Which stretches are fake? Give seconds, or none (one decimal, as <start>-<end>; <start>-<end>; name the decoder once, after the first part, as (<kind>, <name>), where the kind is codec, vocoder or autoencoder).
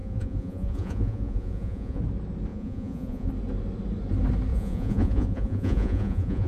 0.0-2.0 (vocoder, Vocos); 2.5-3.3; 4.5-6.5